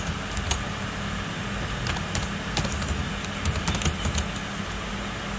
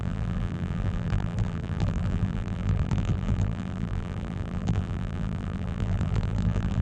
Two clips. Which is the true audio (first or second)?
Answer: first